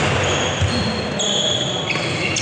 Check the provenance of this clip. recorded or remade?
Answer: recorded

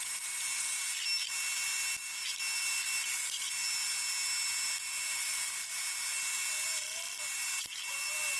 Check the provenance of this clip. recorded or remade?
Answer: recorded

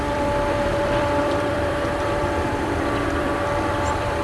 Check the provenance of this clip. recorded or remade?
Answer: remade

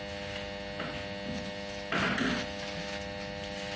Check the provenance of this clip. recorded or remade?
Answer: recorded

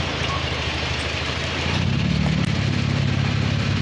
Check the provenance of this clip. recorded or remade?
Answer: remade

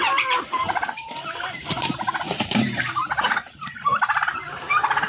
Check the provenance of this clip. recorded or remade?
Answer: remade